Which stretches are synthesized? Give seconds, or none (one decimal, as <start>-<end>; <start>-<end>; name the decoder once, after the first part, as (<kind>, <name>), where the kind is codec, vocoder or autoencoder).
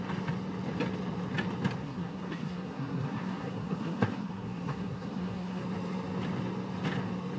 1.8-5.6 (codec, SNAC)